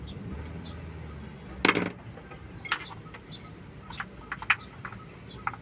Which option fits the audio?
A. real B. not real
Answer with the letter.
A